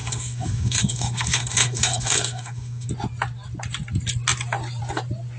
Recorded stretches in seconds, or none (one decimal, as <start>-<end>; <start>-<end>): 2.9-5.4